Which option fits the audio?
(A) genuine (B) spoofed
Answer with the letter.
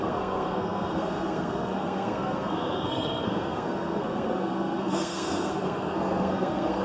B